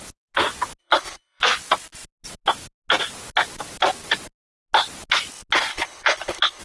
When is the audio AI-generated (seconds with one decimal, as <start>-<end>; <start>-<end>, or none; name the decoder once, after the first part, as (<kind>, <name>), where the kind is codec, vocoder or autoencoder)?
0.8-1.4 (codec, HILCodec); 5.7-6.6